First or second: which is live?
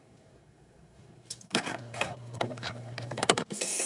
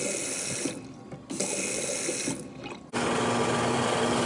second